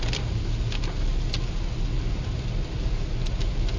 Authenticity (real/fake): real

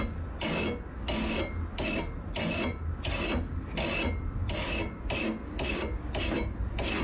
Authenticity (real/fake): real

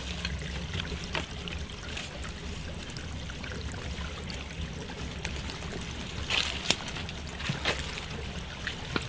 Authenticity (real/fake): real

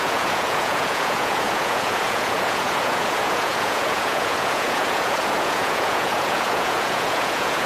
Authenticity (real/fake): fake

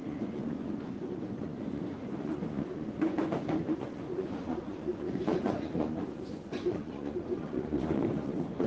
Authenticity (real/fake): fake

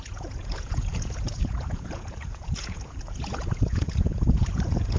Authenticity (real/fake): fake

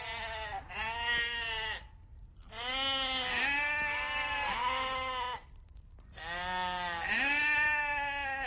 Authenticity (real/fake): real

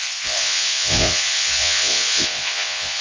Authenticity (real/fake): fake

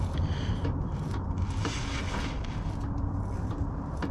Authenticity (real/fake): real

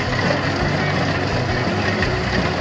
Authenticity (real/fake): real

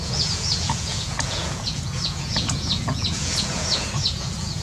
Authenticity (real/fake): fake